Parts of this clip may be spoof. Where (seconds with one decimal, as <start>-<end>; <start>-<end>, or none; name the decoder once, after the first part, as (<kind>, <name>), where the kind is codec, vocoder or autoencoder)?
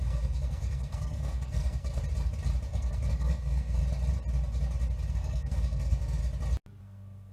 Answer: 0.0-2.0 (codec, SNAC); 2.7-3.8; 5.1-6.2; 6.8-7.3